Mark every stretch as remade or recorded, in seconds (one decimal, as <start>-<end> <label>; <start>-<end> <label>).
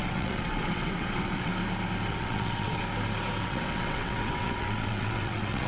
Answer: 0.0-1.5 remade; 1.5-2.1 recorded; 2.1-2.8 remade; 2.8-3.4 recorded; 3.4-5.7 remade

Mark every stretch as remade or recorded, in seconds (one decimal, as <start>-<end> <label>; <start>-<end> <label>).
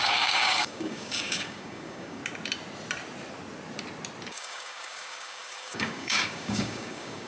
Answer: 0.0-2.2 remade; 2.2-4.3 recorded; 4.3-7.3 remade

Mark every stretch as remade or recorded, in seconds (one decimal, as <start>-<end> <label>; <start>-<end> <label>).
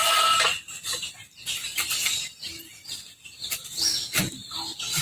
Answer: 0.0-5.0 recorded